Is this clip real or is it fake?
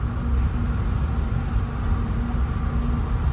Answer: real